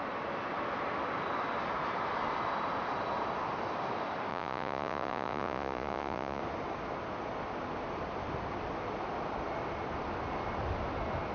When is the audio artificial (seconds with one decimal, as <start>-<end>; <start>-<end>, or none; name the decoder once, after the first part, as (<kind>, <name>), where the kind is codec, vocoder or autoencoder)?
4.3-6.4 (vocoder, Vocos)